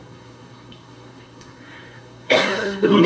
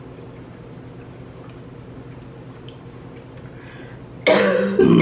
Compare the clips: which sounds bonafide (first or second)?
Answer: second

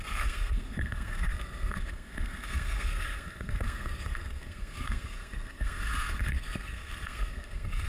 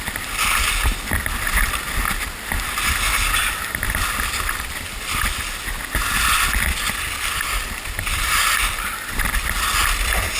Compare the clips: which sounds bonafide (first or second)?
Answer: second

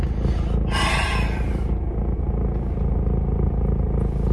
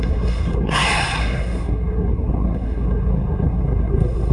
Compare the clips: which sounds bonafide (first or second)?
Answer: first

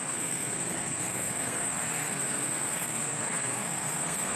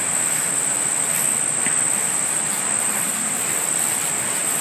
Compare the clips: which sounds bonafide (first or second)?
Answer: second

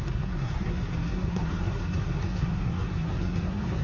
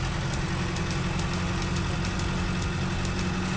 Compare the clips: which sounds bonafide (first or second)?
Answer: second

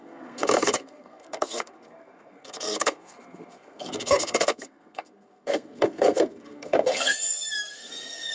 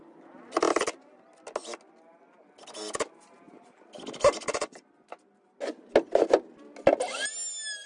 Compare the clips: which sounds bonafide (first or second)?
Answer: second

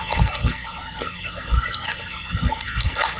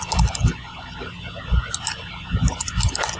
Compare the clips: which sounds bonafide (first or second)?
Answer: second